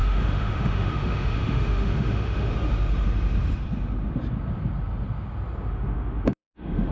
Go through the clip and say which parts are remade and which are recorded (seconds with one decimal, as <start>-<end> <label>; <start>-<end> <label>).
0.0-2.5 remade; 2.5-5.7 recorded; 5.7-6.9 remade